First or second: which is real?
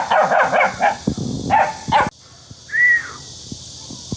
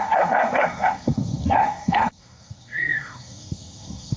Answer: first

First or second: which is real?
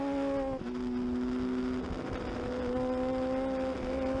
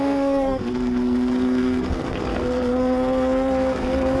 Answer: first